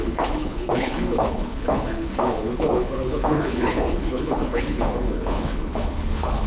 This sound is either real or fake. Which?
fake